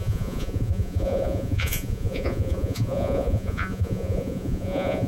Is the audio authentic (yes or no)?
no